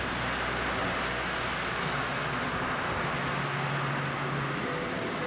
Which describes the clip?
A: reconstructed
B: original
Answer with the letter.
B